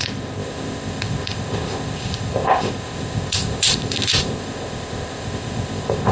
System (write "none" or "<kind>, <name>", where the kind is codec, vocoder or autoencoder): codec, ZipCodec